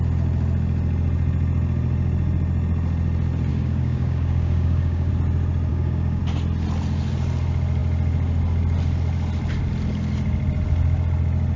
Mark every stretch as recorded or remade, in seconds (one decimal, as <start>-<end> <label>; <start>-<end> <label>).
0.0-3.5 recorded; 3.5-5.1 remade; 5.1-5.7 recorded; 5.7-6.2 remade; 6.2-11.6 recorded